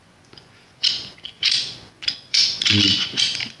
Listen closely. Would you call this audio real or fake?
fake